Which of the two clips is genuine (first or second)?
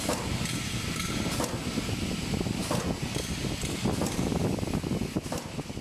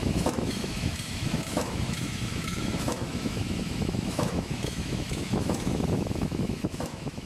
first